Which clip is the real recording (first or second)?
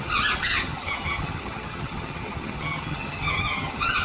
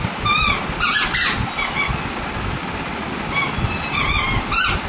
second